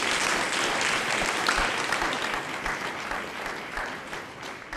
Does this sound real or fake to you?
real